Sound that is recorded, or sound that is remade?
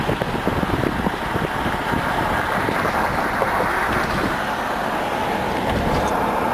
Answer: recorded